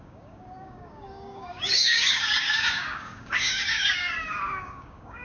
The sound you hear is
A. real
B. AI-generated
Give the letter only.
B